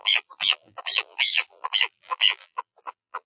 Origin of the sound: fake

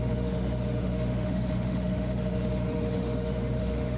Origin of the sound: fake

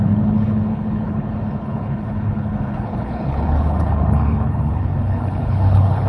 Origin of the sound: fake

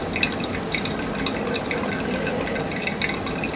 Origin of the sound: real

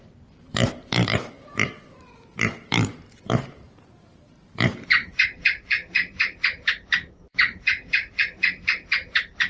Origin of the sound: fake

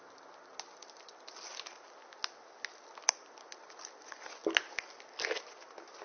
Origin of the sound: real